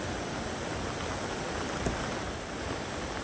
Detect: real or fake real